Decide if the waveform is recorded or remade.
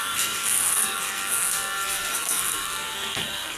remade